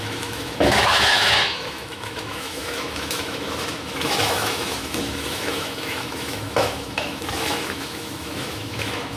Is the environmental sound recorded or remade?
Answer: remade